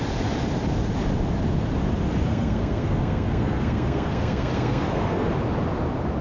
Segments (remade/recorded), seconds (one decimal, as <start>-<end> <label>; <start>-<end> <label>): 0.0-2.3 recorded; 2.3-5.3 remade; 5.3-6.2 recorded